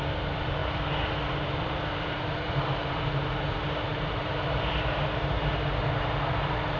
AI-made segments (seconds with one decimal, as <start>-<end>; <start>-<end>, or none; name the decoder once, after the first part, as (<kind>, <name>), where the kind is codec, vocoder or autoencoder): 0.0-6.8 (vocoder, BigVGAN v2)